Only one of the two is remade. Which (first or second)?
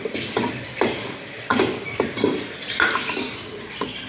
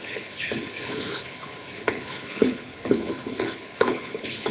second